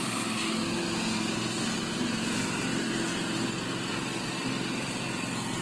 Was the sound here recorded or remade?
recorded